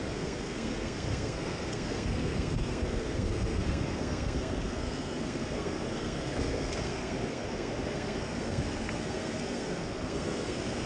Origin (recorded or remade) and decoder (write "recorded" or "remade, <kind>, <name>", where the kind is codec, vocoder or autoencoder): remade, codec, SNAC